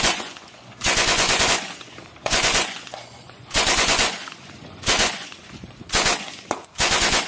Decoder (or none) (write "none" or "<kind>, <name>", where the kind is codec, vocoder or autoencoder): vocoder, Vocos